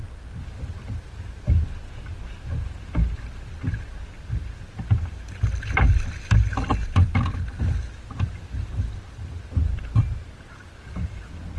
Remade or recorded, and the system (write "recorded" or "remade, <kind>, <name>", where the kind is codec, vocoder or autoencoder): recorded